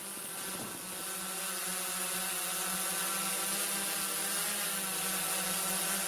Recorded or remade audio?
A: recorded